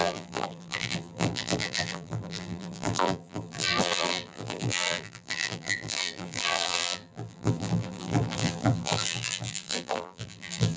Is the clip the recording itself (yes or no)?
no